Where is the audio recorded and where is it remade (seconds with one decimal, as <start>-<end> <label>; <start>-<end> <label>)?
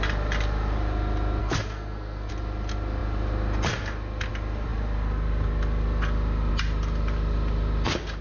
0.0-1.4 recorded; 1.4-2.3 remade; 2.3-8.2 recorded